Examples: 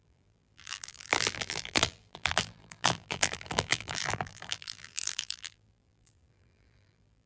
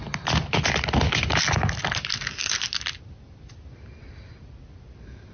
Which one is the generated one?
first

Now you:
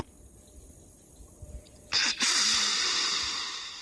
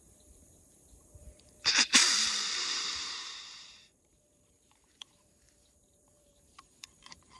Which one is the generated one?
second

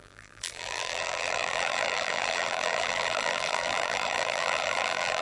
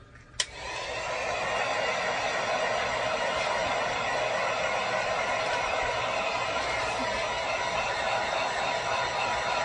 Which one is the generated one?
first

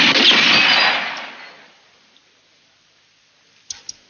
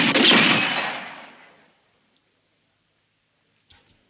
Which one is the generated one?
second